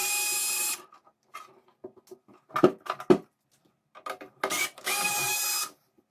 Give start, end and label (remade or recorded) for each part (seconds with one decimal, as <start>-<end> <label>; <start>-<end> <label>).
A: 0.0-6.1 recorded